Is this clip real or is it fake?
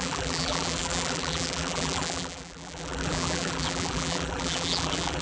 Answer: fake